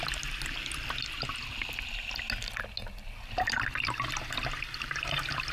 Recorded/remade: recorded